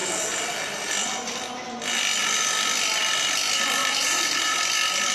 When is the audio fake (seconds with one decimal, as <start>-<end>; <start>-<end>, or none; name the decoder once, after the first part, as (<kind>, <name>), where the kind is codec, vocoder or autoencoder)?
0.0-0.9 (vocoder, BigVGAN v2); 3.8-4.6